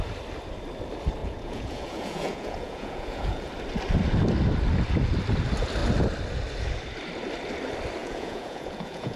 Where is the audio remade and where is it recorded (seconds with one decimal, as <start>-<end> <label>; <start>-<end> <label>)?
0.0-1.2 recorded; 1.2-3.5 remade; 3.5-8.0 recorded; 8.0-9.2 remade